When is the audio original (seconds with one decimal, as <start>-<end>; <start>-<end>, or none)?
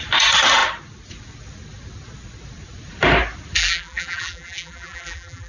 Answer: 0.0-3.6